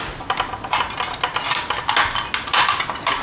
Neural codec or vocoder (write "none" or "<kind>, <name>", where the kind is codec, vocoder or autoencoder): none